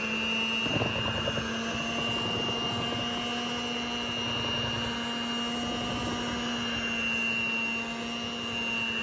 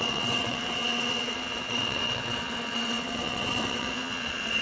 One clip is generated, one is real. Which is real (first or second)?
first